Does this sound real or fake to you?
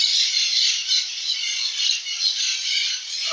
real